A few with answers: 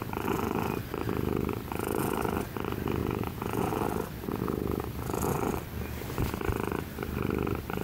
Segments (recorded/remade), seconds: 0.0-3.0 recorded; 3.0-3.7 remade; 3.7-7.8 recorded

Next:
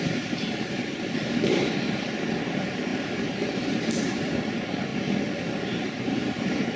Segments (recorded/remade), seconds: 0.0-4.9 remade; 4.9-5.6 recorded; 5.6-6.8 remade